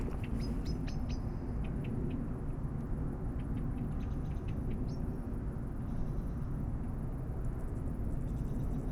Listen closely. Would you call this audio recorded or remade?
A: recorded